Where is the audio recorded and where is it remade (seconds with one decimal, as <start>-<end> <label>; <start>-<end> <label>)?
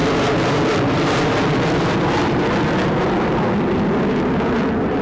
0.0-2.5 remade; 2.5-5.0 recorded